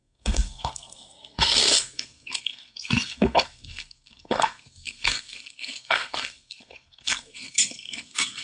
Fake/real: fake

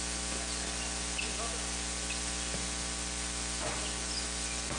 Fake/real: real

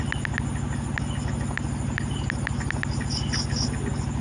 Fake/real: real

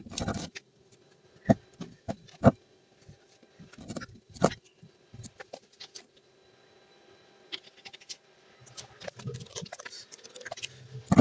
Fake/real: real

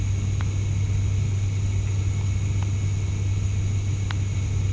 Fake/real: real